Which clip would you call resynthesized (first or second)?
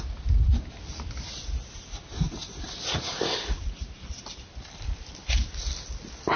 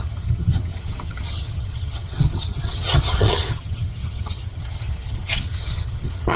second